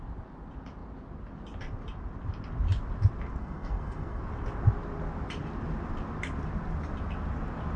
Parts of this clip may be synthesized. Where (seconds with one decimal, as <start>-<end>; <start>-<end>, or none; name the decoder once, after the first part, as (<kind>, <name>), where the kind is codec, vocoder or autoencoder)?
3.4-4.2 (codec, SNAC)